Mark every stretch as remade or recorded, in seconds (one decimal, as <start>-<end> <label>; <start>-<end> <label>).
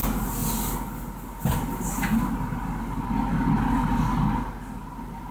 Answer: 0.0-5.3 recorded